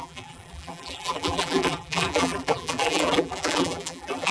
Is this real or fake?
fake